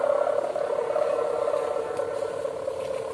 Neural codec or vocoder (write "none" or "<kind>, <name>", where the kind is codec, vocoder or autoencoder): none